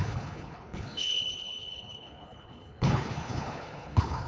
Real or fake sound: fake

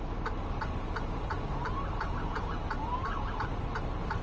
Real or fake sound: real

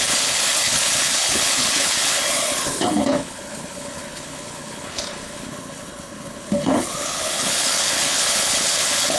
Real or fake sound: fake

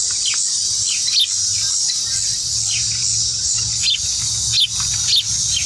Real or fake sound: real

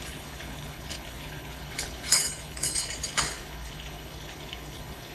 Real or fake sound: fake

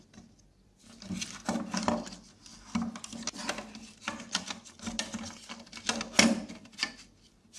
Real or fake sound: real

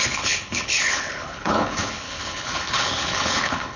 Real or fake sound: fake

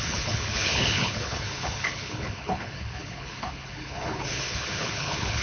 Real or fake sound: fake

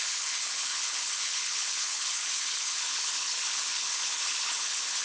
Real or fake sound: fake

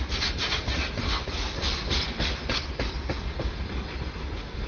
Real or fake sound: real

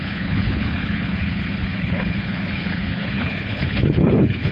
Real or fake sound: fake